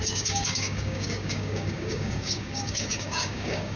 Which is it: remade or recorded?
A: remade